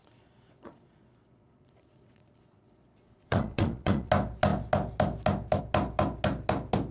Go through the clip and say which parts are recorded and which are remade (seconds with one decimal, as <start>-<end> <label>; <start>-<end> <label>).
0.0-4.1 remade; 4.1-6.9 recorded